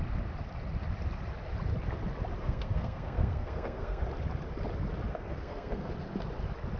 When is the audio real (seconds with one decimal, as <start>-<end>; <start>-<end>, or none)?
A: 0.0-2.4; 4.0-5.1; 5.9-6.8